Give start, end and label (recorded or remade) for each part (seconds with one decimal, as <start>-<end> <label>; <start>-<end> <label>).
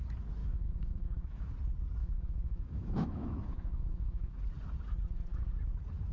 0.0-0.4 recorded; 0.4-1.4 remade; 1.4-2.0 recorded; 2.0-4.4 remade; 4.4-6.1 recorded